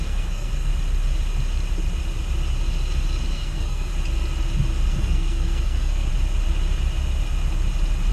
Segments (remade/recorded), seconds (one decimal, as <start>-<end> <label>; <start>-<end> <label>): 0.0-0.7 remade; 0.7-3.3 recorded; 3.3-3.9 remade; 3.9-4.9 recorded; 4.9-6.1 remade; 6.1-8.1 recorded